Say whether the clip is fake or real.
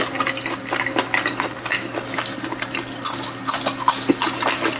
real